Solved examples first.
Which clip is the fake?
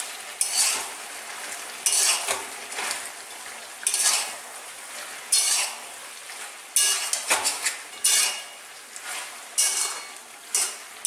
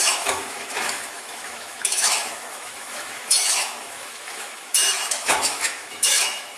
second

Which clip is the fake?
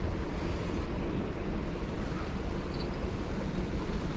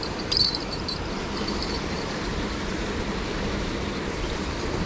second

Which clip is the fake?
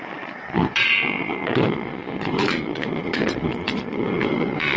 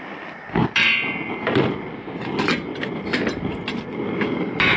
first